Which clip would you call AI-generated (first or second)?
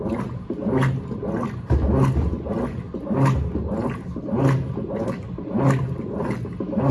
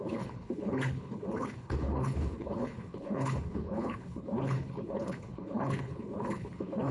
second